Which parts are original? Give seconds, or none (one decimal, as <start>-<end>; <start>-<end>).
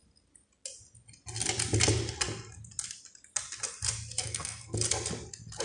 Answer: 0.0-4.2; 4.8-5.6